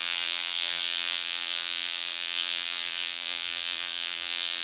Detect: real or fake fake